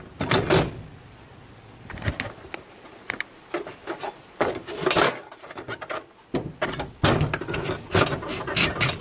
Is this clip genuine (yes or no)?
yes